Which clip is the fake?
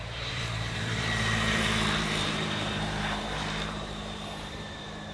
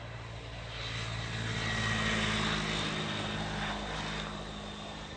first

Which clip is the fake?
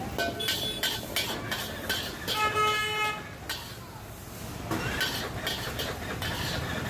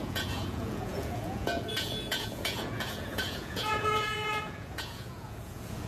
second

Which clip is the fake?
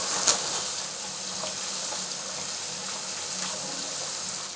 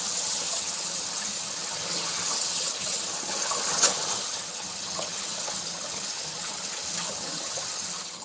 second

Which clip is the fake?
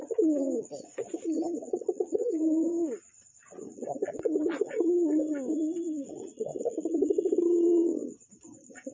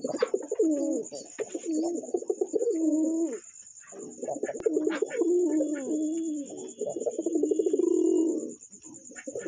first